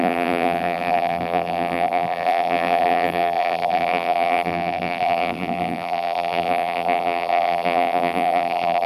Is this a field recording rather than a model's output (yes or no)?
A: no